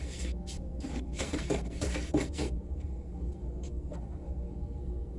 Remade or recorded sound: remade